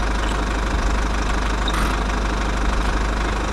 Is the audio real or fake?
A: real